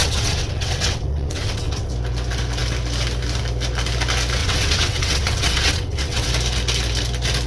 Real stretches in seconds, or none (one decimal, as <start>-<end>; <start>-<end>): 1.9-4.4; 6.3-7.5